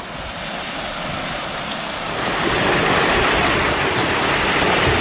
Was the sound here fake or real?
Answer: real